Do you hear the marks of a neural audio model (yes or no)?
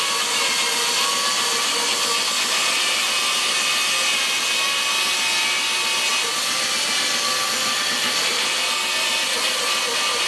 no